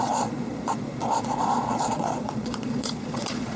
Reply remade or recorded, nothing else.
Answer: remade